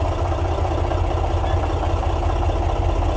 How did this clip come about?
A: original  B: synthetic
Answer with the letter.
A